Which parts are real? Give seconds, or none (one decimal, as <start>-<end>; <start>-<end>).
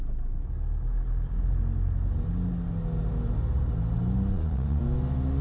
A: 0.0-4.3; 4.8-5.4